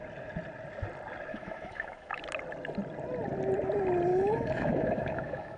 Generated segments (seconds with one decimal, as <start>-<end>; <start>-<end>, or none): 1.3-2.2; 4.1-5.6